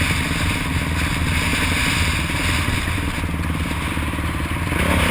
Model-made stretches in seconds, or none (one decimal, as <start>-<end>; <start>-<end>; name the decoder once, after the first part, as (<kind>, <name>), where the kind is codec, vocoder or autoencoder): none